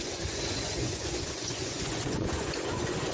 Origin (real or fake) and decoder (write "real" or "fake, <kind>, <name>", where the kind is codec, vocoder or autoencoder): fake, vocoder, Vocos